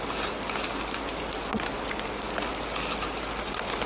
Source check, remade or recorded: recorded